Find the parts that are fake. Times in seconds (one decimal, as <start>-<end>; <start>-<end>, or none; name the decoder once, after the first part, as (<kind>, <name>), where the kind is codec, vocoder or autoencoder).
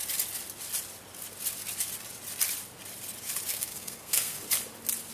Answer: 3.5-4.4 (codec, SNAC)